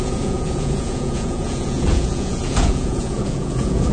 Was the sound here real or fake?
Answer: fake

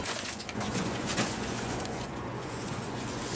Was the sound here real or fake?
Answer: fake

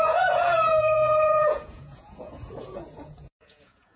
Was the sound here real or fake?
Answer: fake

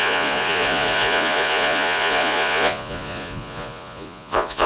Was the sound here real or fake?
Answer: fake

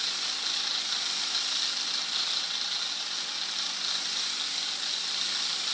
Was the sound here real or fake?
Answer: real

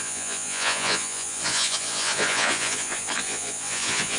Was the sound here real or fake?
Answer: fake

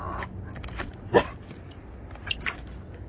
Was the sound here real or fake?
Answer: real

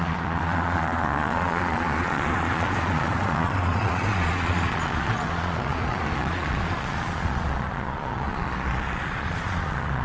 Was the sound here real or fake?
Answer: fake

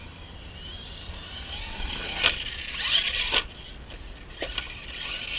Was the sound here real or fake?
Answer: real